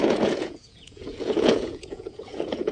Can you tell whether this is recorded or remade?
remade